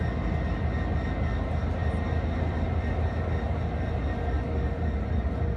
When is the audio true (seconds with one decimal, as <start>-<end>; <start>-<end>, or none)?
0.0-5.6